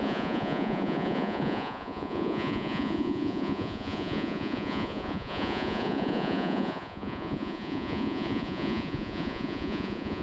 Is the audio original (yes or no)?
no